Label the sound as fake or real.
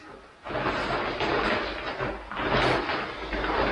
real